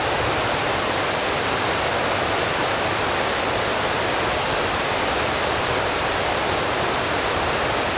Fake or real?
real